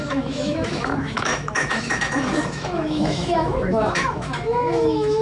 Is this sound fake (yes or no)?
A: yes